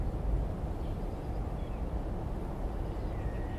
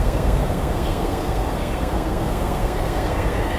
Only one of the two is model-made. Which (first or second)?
second